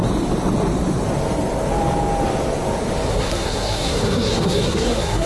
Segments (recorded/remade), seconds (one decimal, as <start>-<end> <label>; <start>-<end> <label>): 0.0-3.1 recorded; 3.1-5.3 remade